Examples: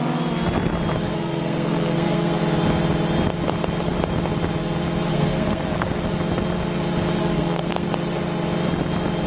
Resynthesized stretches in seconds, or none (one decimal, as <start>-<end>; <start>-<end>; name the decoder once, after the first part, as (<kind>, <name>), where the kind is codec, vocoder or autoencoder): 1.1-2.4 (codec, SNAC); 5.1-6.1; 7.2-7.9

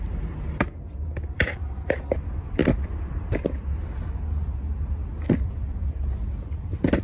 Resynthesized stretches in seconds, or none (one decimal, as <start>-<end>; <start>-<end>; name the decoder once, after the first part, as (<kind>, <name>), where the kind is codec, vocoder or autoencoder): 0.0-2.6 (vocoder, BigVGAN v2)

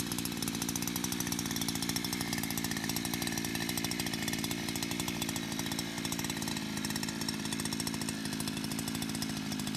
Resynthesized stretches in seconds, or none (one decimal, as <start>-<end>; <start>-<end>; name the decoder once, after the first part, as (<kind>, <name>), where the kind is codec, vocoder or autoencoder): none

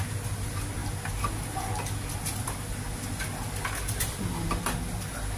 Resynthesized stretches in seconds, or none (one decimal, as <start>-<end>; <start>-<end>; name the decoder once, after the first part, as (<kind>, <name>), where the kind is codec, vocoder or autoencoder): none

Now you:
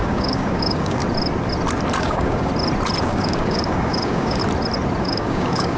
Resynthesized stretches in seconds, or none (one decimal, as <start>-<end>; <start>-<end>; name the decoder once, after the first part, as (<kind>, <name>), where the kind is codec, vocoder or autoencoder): 0.0-1.0 (codec, DAC); 2.0-2.5; 3.0-4.4; 5.0-5.8

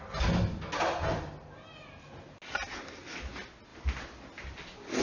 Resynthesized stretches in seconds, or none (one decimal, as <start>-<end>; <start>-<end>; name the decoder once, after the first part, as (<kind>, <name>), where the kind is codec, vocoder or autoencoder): none

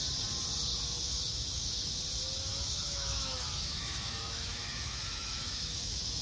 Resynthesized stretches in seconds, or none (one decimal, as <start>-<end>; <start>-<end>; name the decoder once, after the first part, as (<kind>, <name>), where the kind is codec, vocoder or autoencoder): 0.7-2.0 (autoencoder, DAC-VAE); 2.5-6.2